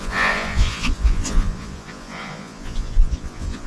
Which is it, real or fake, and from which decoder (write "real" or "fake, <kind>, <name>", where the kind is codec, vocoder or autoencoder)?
fake, vocoder, Vocos